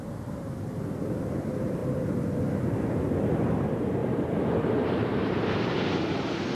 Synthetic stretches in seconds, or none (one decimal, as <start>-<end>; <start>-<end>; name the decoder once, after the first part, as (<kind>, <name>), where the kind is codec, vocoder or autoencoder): 4.0-6.0 (vocoder, BigVGAN v2)